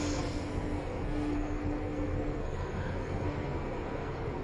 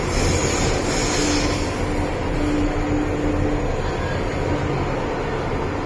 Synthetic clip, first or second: first